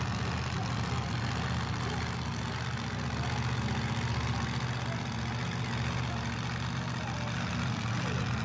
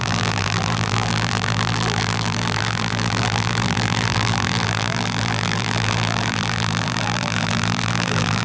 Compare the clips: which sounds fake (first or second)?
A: second